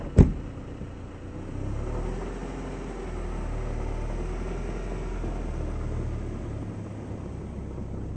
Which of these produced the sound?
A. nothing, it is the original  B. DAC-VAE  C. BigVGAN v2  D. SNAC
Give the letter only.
A